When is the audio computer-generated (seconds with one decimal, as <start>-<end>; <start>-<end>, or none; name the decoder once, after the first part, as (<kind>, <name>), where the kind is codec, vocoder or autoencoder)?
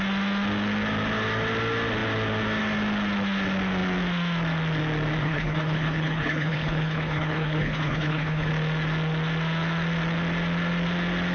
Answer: 5.2-8.5 (codec, HILCodec)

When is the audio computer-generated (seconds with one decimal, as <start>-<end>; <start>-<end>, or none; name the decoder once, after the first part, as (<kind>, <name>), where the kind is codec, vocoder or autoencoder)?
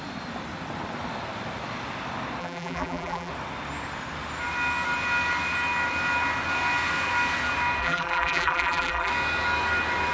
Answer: 2.4-3.3 (vocoder, BigVGAN v2); 7.8-9.1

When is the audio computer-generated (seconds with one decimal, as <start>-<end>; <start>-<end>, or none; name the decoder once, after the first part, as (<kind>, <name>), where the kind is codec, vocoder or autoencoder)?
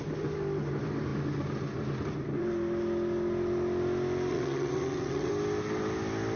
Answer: 4.3-5.3 (vocoder, WaveNeXt)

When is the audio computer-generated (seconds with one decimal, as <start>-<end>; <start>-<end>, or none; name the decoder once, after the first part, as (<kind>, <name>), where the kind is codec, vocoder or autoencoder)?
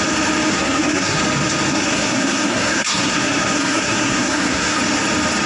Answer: 0.5-1.2 (codec, SNAC); 1.7-4.8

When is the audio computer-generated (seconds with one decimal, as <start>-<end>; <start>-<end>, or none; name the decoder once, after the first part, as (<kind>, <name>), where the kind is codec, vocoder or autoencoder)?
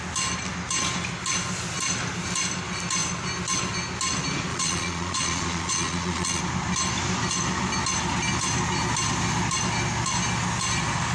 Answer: 4.5-6.4 (vocoder, Vocos)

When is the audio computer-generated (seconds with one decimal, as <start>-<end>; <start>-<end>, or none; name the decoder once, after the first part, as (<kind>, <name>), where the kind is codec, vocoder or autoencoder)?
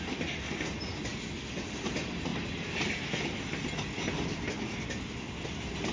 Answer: none